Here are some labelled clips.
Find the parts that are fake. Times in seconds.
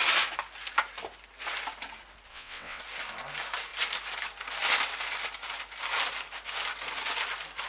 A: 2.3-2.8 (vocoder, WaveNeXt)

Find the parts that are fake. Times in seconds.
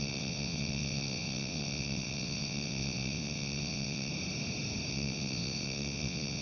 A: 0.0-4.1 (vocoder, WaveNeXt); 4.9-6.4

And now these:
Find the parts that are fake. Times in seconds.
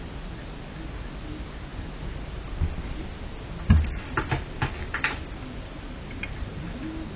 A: none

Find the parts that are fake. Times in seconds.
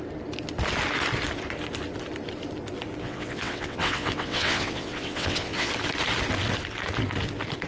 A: 3.0-5.7 (vocoder, WaveNeXt)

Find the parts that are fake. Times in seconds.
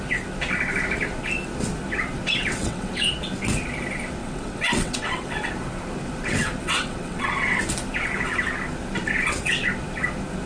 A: 2.4-2.9 (vocoder, WaveNeXt); 4.2-5.5; 6.6-7.6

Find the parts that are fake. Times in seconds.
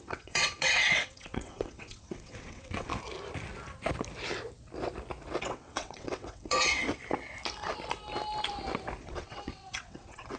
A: 0.0-2.9 (vocoder, WaveNeXt); 5.4-6.8; 9.0-10.4